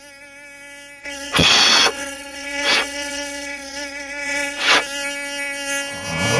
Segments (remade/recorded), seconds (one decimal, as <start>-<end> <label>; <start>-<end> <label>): 0.0-1.0 recorded; 1.0-4.8 remade; 4.8-6.4 recorded